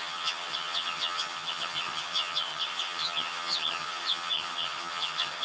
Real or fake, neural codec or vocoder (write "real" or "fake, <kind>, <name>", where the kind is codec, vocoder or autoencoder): fake, vocoder, HiFi-GAN